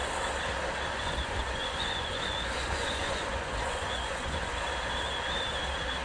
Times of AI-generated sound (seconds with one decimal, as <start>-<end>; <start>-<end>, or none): 0.9-4.5